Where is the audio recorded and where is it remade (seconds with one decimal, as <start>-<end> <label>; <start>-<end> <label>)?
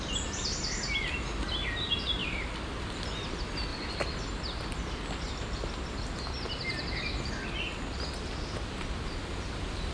0.0-9.9 recorded